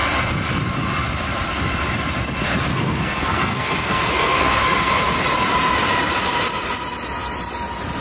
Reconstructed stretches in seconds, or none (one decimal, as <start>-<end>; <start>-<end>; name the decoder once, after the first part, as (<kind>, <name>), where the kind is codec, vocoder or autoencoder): 2.7-4.9 (codec, SNAC)